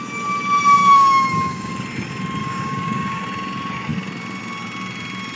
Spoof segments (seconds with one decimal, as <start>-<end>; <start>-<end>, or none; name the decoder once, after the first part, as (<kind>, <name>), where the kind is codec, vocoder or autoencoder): 0.8-1.7 (codec, DAC); 2.4-3.2